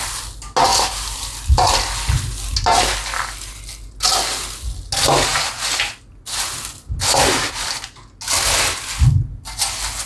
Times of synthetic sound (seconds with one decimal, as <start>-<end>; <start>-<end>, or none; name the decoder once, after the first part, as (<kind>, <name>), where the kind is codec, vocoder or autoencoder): none